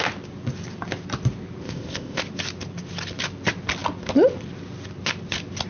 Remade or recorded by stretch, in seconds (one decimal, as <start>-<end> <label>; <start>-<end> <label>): 0.0-1.6 recorded; 1.6-2.2 remade; 2.2-5.7 recorded